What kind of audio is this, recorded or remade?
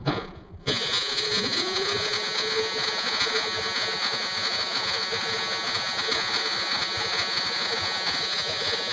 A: remade